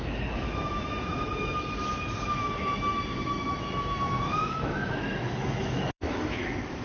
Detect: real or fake fake